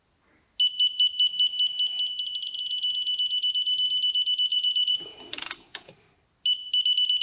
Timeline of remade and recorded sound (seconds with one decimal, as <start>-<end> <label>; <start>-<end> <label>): 0.0-4.5 recorded; 4.5-5.9 remade; 5.9-7.2 recorded